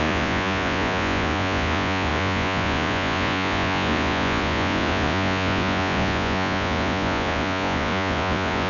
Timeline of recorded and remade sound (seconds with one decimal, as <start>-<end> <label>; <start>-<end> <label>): 0.0-8.7 remade